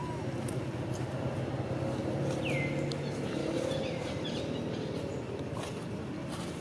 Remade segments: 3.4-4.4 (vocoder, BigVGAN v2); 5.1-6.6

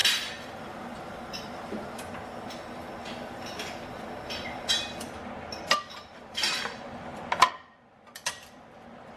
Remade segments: 0.0-0.6 (vocoder, BigVGAN v2); 3.0-4.7

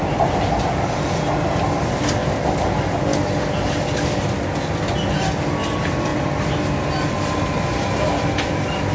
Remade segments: 2.2-2.8 (vocoder, BigVGAN v2)

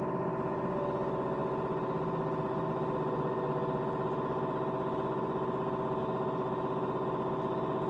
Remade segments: none